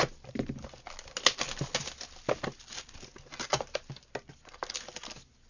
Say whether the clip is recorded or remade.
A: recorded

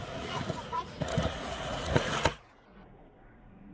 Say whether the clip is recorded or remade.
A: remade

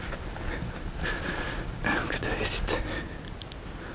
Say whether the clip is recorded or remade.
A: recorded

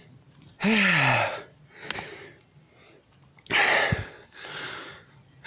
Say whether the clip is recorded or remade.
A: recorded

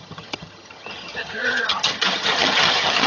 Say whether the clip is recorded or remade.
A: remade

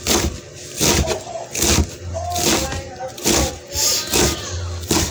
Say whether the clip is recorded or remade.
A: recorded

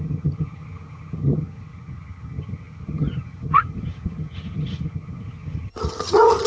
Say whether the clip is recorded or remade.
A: remade